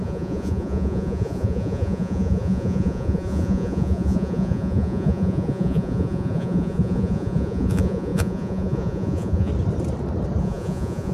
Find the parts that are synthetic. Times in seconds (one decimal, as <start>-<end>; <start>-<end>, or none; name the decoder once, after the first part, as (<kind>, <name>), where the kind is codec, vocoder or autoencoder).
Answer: 0.0-9.5 (vocoder, Vocos); 10.4-11.1